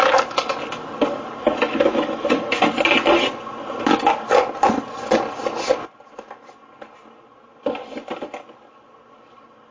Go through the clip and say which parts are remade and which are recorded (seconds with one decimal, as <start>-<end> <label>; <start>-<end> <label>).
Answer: 0.0-1.4 recorded; 1.4-2.7 remade; 2.7-9.7 recorded